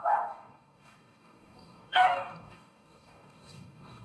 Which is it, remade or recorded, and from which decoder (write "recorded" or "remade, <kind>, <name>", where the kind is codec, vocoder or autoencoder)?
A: remade, codec, DAC